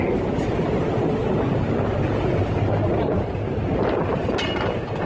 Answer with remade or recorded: recorded